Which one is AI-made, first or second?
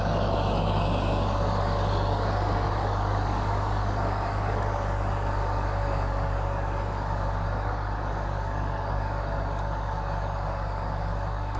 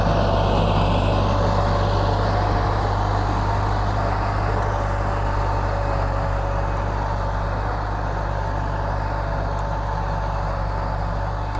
first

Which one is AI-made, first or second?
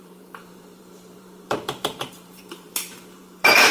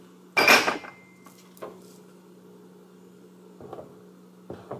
first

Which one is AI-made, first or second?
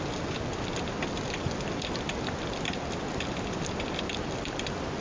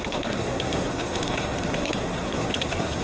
second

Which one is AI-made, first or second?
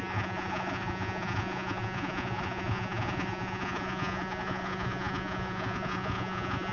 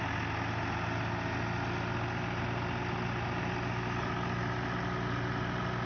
first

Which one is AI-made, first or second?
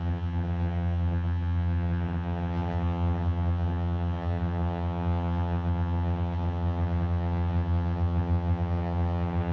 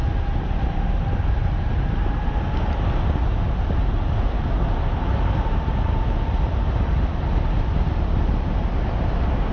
first